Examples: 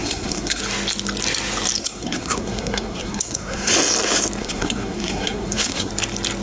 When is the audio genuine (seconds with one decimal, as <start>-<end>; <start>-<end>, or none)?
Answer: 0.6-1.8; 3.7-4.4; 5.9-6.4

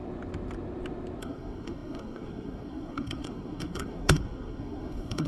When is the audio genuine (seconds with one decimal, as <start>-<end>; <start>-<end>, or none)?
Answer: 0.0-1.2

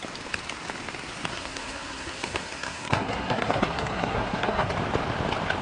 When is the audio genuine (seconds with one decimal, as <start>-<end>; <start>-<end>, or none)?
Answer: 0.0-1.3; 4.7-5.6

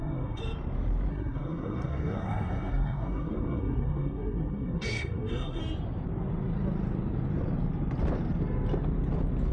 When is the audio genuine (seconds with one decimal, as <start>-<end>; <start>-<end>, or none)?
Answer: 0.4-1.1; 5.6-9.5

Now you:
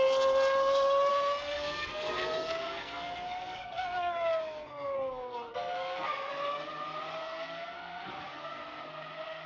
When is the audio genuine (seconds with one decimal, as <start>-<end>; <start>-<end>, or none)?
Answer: 0.0-1.1; 6.3-7.2; 8.9-9.5

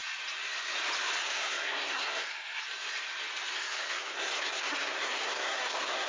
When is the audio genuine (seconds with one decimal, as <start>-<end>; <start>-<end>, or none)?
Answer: 0.0-1.2; 2.6-3.5

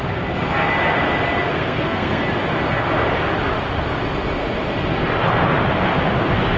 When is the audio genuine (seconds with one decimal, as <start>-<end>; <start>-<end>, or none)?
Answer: 0.0-1.5; 2.2-6.6

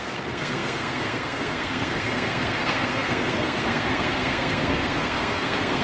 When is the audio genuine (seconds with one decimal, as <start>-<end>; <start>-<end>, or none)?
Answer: none